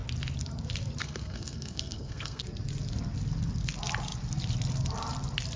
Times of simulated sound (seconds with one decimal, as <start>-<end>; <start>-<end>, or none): 1.0-2.4